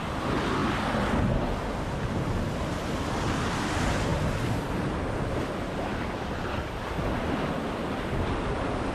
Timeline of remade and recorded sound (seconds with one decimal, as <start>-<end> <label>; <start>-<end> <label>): 0.0-0.6 recorded; 0.6-1.2 remade; 1.2-5.9 recorded; 5.9-8.5 remade; 8.5-8.9 recorded